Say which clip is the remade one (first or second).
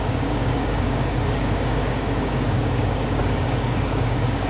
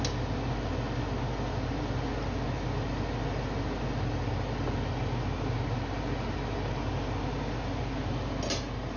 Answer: first